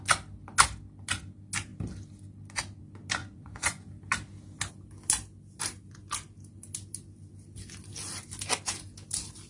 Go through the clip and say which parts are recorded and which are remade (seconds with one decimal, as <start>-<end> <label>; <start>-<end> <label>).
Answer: 0.0-3.2 recorded; 3.2-3.8 remade; 3.8-9.5 recorded

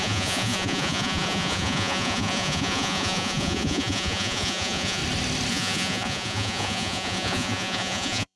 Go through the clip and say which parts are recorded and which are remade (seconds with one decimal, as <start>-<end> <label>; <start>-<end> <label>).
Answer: 0.0-5.0 remade; 5.0-5.5 recorded; 5.5-8.4 remade